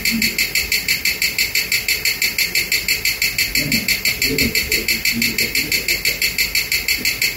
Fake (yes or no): no